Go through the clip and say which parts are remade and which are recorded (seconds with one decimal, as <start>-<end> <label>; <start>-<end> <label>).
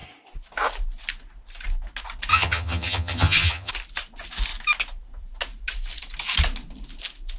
0.0-2.3 recorded; 2.3-3.7 remade; 3.7-7.4 recorded